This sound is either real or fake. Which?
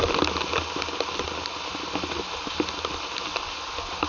real